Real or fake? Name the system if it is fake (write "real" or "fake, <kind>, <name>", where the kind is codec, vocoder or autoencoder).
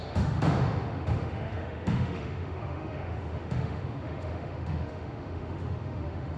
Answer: fake, autoencoder, DAC-VAE